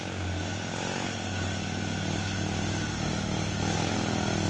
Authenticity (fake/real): real